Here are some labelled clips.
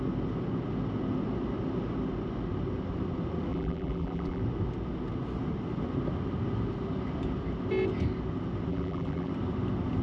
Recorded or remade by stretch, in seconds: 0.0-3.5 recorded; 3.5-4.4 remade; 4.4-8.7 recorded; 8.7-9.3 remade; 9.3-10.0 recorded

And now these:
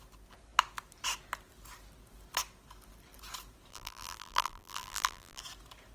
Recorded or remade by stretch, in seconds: 0.0-3.7 recorded; 3.7-5.4 remade; 5.4-5.9 recorded

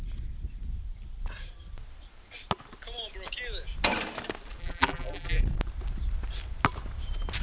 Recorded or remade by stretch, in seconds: 0.0-4.6 recorded; 4.6-5.4 remade; 5.4-7.4 recorded

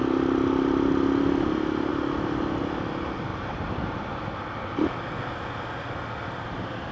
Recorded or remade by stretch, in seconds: 0.0-3.3 recorded; 3.3-5.0 remade; 5.0-6.9 recorded

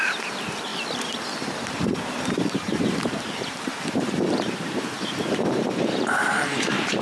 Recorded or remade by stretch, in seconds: 0.0-0.7 remade; 0.7-1.4 recorded; 1.4-3.7 remade; 3.7-4.3 recorded; 4.3-7.0 remade

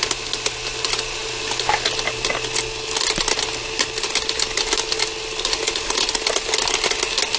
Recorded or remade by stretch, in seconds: 0.0-7.4 recorded